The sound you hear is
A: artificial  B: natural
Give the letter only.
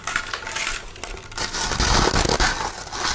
B